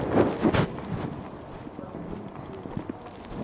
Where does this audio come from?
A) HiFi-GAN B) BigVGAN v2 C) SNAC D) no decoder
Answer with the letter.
D